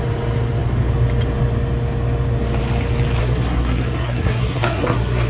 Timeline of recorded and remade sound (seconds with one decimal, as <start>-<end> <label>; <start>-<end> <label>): 0.0-3.2 recorded; 3.2-5.3 remade